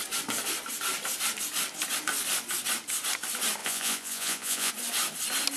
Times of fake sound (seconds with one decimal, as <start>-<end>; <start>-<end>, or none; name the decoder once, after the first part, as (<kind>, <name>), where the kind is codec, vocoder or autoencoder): 3.6-4.7 (vocoder, Vocos)